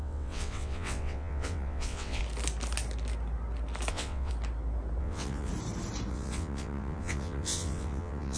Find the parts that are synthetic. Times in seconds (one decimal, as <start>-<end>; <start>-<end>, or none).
0.0-2.2; 3.9-4.3; 5.0-5.5; 6.1-8.4